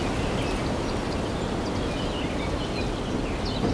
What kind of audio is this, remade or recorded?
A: recorded